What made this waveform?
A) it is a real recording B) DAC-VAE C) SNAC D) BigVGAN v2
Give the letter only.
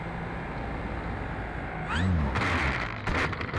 A